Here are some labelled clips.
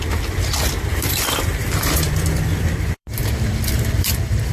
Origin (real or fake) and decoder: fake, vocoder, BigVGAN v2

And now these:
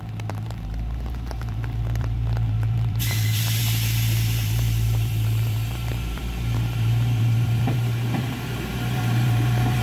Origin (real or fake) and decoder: fake, vocoder, BigVGAN v2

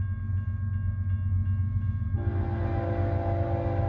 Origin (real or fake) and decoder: real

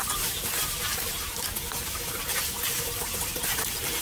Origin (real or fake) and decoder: fake, vocoder, BigVGAN v2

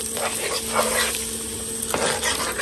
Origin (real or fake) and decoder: real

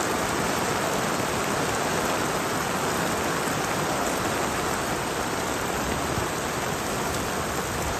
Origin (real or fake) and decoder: real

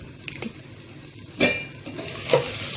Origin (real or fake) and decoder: real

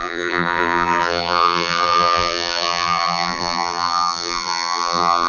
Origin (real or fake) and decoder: fake, vocoder, BigVGAN v2